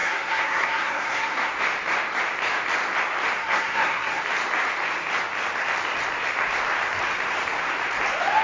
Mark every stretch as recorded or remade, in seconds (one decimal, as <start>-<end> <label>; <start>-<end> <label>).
0.0-1.5 remade; 1.5-3.4 recorded; 3.4-4.2 remade; 4.2-8.4 recorded

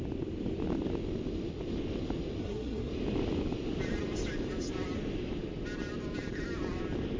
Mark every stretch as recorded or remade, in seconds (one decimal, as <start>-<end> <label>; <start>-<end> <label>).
0.0-2.4 recorded; 2.4-2.9 remade; 2.9-7.2 recorded

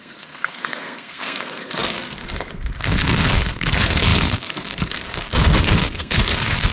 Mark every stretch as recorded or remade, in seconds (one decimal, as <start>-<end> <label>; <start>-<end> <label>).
0.0-6.7 remade

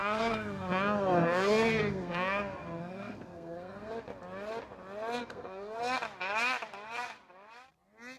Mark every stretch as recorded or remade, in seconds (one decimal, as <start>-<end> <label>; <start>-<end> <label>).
0.0-3.9 remade; 3.9-5.2 recorded; 5.2-5.8 remade; 5.8-8.2 recorded

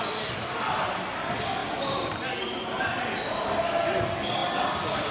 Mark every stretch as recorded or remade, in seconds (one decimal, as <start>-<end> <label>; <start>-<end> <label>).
0.0-5.1 recorded

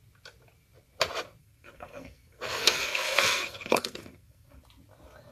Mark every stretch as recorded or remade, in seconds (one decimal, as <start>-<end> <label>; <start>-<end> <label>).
0.0-1.4 recorded; 1.4-4.6 remade; 4.6-5.3 recorded